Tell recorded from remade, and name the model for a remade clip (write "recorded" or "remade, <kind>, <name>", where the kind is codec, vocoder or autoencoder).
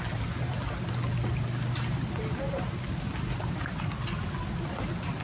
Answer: recorded